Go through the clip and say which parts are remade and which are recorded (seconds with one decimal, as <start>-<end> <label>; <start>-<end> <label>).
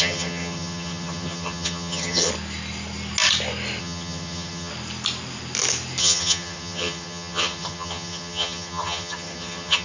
0.0-2.3 remade; 2.3-3.8 recorded; 3.8-4.7 remade; 4.7-6.0 recorded; 6.0-9.8 remade